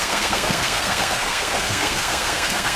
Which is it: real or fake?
fake